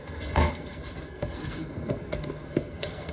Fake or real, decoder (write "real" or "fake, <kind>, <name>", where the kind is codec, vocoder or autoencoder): fake, codec, SNAC